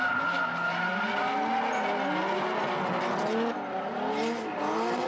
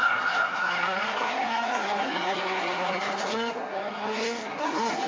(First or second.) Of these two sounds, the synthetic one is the second